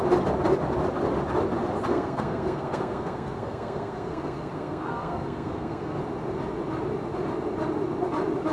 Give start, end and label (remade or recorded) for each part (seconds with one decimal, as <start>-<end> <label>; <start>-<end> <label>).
0.0-1.9 recorded; 1.9-6.0 remade; 6.0-8.5 recorded